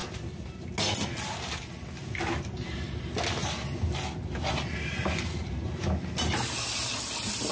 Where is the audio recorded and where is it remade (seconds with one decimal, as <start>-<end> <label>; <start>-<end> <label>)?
0.0-7.5 recorded